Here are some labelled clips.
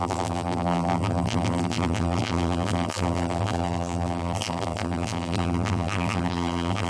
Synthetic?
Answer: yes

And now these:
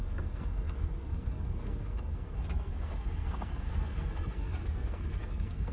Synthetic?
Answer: yes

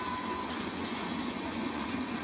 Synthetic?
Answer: yes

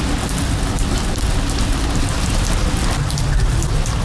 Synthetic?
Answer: no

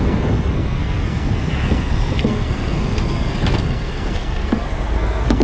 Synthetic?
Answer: yes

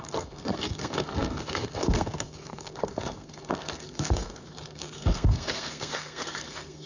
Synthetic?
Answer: yes